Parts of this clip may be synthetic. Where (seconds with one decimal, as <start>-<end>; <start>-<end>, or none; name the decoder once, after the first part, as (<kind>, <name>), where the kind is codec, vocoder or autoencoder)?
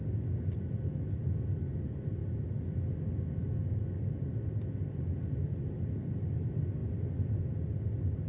none